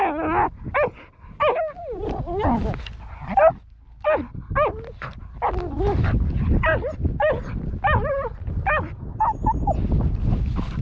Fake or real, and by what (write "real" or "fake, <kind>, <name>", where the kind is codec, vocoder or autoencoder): real